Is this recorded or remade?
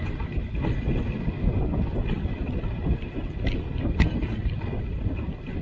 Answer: recorded